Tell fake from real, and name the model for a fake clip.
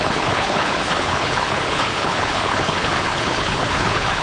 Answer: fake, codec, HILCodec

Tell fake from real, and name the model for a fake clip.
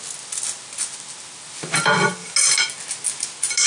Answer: real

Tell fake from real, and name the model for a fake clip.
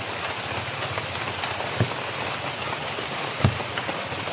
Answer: real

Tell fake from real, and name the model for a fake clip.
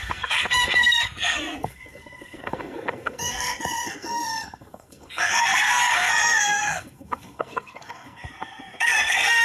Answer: fake, codec, SNAC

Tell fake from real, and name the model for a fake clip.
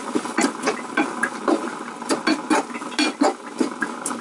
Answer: real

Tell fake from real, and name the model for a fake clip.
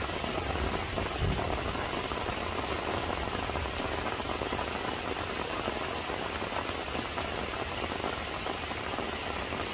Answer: real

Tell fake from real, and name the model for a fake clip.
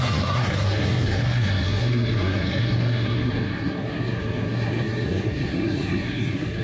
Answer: fake, codec, SNAC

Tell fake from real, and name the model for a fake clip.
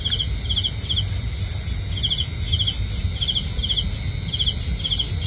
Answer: real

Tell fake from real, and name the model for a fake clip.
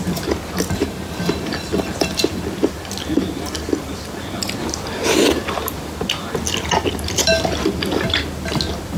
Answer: real